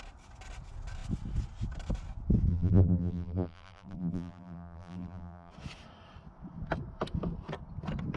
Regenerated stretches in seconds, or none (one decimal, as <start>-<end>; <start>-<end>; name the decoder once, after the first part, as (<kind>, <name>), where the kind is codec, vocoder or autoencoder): 2.5-5.5 (vocoder, BigVGAN v2)

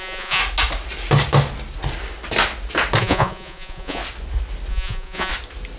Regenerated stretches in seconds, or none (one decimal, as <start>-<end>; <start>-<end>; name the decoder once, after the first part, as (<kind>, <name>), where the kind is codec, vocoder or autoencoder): 0.0-0.4 (vocoder, Vocos); 3.0-4.0; 4.7-5.3

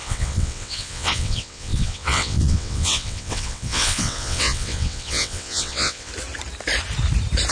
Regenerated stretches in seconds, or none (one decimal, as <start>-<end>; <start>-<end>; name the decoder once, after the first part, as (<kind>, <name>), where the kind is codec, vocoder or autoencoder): 0.0-6.1 (vocoder, WaveNeXt)

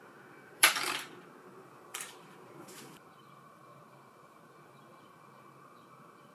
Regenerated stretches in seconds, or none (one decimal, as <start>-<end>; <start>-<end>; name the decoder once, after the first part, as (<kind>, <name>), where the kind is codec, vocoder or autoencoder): 0.0-6.3 (vocoder, BigVGAN v2)